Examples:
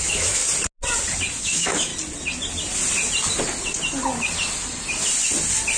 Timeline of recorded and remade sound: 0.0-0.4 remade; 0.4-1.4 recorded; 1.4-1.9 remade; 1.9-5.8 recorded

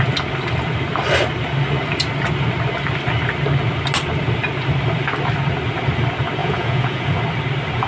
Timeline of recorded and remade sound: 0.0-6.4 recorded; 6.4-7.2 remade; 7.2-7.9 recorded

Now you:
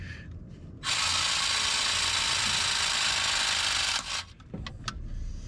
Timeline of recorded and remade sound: 0.0-5.5 recorded